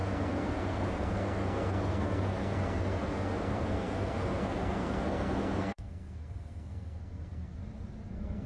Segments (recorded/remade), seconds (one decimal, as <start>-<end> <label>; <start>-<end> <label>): 0.0-7.6 remade; 7.6-8.1 recorded; 8.1-8.5 remade